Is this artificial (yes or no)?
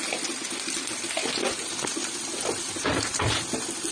no